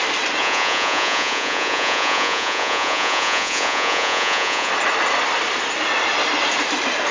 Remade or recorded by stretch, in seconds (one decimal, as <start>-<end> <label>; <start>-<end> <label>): 0.0-0.4 recorded; 0.4-4.7 remade; 4.7-7.1 recorded